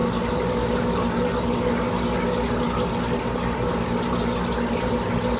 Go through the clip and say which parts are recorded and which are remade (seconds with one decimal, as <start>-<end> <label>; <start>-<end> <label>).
0.0-5.4 recorded